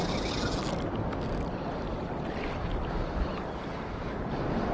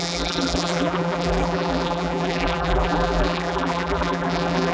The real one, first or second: first